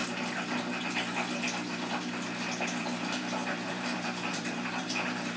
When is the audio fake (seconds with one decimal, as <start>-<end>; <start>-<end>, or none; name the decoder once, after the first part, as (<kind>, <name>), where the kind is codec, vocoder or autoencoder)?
2.8-5.4 (vocoder, BigVGAN v2)